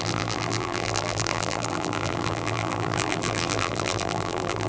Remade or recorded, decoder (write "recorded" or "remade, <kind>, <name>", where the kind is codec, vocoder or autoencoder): remade, vocoder, BigVGAN v2